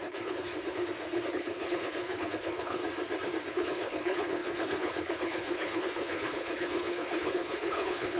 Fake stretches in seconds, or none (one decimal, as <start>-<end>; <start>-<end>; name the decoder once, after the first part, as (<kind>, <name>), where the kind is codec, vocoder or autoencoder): 0.0-0.5 (codec, HILCodec); 1.3-2.8; 3.5-8.2